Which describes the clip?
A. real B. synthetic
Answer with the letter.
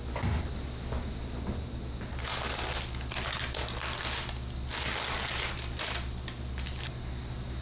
A